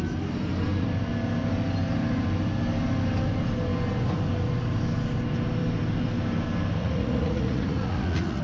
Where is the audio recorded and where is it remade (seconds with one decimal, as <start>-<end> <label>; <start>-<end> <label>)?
0.0-6.8 recorded; 6.8-8.4 remade